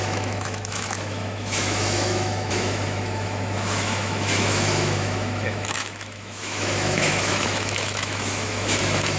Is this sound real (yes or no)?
no